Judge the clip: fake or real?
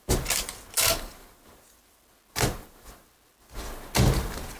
real